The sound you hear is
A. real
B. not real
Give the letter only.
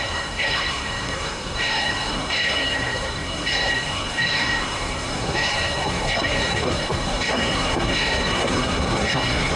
B